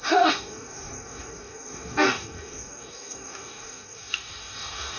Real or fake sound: fake